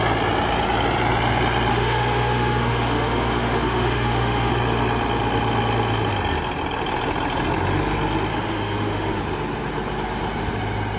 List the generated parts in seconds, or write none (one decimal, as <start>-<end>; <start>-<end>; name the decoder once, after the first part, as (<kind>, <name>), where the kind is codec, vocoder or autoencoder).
1.7-4.5 (autoencoder, DAC-VAE); 8.3-9.2